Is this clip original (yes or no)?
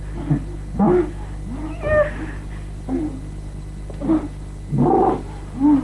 yes